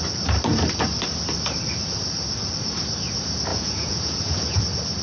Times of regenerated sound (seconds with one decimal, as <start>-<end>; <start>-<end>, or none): 3.5-4.6